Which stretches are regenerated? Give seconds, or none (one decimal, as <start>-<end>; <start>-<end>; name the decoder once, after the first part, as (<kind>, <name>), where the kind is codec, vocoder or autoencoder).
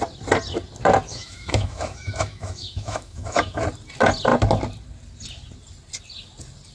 1.1-3.6 (autoencoder, DAC-VAE)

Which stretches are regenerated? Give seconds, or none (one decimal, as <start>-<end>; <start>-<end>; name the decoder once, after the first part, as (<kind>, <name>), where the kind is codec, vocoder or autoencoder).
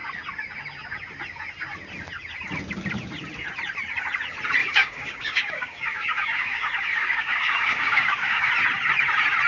4.6-8.5 (codec, DAC)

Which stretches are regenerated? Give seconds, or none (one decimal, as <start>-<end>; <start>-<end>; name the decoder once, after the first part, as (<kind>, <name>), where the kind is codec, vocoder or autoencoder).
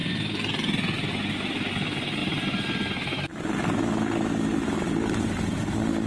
2.2-5.6 (vocoder, BigVGAN v2)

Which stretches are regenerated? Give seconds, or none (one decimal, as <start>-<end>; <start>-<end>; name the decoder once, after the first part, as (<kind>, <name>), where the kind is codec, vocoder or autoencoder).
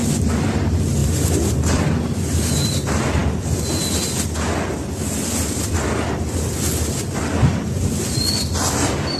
0.0-0.5 (vocoder, BigVGAN v2); 1.0-2.7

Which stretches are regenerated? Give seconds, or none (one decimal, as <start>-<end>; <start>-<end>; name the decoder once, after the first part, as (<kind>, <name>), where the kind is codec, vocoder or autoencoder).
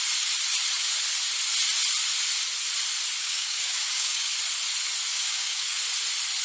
3.2-4.3 (codec, DAC); 5.1-5.8